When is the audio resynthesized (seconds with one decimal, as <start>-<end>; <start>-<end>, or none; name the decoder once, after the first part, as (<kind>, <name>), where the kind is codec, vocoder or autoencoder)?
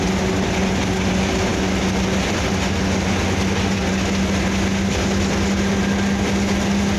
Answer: none